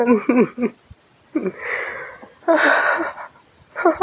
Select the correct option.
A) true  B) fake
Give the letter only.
A